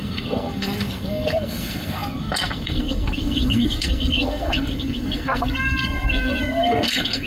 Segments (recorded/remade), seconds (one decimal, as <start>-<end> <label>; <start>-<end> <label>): 0.0-7.3 remade